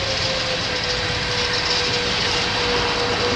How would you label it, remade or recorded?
recorded